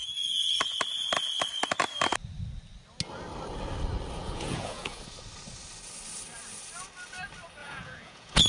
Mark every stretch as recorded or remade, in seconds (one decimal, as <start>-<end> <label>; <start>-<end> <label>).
0.0-4.2 recorded; 4.2-5.0 remade; 5.0-7.6 recorded; 7.6-8.5 remade